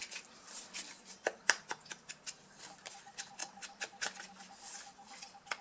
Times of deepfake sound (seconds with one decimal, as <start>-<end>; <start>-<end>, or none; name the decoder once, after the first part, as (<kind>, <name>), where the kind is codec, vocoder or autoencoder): none